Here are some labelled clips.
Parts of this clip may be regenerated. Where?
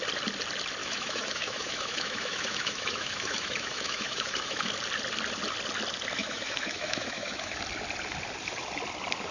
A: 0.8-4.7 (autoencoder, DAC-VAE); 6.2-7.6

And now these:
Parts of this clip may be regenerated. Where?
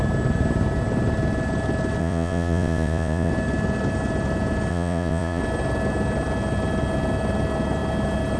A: 2.0-3.3 (vocoder, Vocos); 4.7-5.4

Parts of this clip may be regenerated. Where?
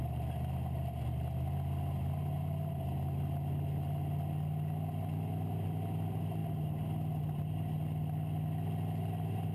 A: none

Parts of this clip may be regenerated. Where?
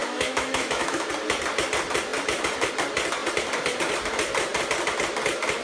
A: 0.0-1.1 (autoencoder, DAC-VAE)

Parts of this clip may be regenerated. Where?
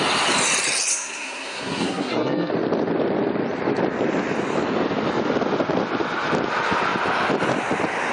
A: 0.9-2.5 (codec, SNAC)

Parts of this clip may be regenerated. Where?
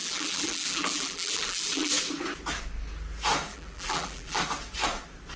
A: 0.0-1.9 (vocoder, BigVGAN v2); 3.5-4.4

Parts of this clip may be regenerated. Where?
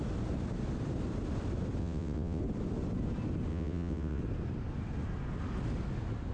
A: 1.8-2.4 (vocoder, WaveNeXt); 3.5-4.2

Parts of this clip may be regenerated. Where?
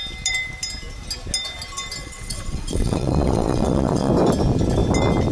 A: 2.0-4.1 (vocoder, WaveNeXt)